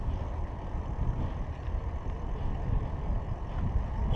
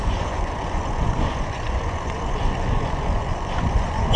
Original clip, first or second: first